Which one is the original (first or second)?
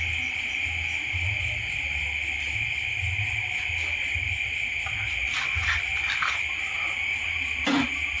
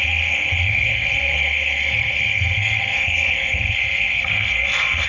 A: first